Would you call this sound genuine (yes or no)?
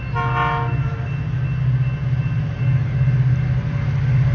yes